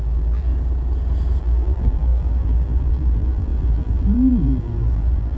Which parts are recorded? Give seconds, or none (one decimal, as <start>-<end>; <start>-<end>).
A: 0.5-1.4